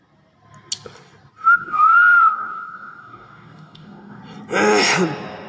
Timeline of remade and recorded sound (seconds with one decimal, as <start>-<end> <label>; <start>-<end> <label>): 0.0-1.6 recorded; 1.6-4.2 remade; 4.2-5.5 recorded